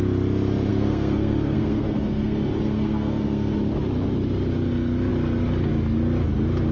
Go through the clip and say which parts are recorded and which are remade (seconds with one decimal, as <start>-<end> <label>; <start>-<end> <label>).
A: 0.0-0.7 recorded; 0.7-3.5 remade; 3.5-6.7 recorded